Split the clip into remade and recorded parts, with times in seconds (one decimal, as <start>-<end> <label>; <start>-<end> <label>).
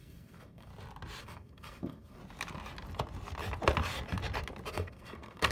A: 0.0-0.7 remade; 0.7-1.2 recorded; 1.2-2.2 remade; 2.2-4.7 recorded; 4.7-5.5 remade